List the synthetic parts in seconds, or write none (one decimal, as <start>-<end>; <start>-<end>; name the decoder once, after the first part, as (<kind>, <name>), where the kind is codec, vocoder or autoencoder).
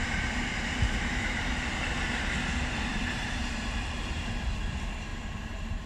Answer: 2.9-3.5 (vocoder, BigVGAN v2); 5.1-5.9